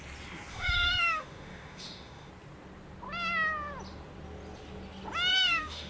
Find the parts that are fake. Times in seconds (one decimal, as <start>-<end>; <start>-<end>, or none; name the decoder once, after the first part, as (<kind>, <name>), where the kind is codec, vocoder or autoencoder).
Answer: 0.5-2.3 (autoencoder, DAC-VAE); 5.3-5.9